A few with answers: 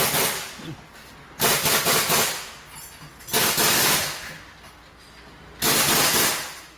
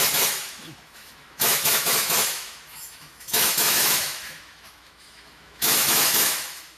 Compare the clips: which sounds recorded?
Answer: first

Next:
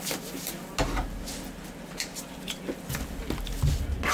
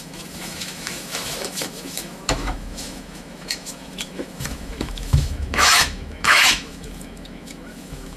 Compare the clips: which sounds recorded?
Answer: first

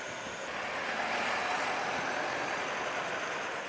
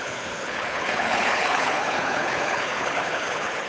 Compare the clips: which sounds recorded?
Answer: first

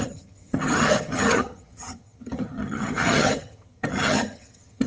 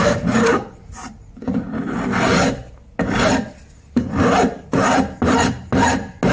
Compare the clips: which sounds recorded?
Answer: second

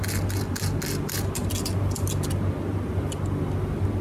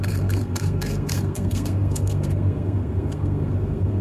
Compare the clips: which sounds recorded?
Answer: first